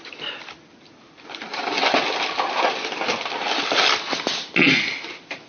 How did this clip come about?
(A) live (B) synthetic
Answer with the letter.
A